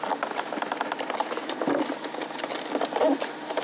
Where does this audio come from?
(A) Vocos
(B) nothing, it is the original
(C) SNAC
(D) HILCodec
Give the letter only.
B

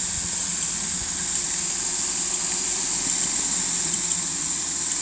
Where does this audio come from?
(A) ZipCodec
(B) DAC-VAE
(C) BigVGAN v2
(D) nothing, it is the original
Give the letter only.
C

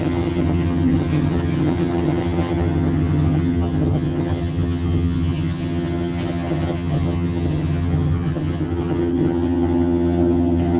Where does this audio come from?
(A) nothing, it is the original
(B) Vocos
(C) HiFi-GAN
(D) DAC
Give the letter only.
C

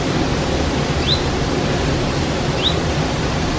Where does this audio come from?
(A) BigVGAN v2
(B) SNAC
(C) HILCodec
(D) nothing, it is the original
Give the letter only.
D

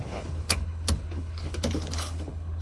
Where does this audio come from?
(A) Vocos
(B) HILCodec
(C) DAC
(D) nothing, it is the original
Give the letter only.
B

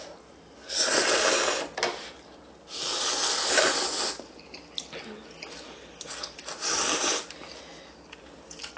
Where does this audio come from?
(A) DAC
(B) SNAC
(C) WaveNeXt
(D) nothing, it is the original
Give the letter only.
D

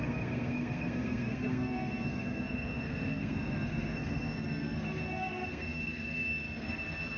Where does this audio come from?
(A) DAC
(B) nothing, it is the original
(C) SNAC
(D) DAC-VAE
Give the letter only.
C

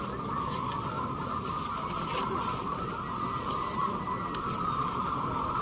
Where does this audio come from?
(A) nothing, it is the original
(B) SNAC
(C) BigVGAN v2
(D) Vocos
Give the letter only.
A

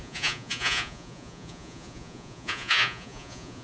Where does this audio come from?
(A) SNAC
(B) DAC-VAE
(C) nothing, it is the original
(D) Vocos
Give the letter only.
D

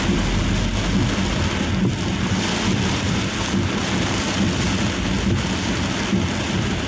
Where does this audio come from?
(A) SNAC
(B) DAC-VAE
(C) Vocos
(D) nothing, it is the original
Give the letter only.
D